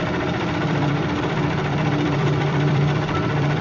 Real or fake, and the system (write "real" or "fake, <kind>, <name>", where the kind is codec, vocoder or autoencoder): fake, vocoder, BigVGAN v2